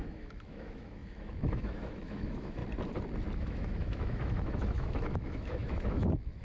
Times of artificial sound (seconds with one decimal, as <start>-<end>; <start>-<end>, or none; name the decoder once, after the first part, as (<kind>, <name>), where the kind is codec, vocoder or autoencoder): 0.0-2.6 (autoencoder, DAC-VAE); 3.4-6.4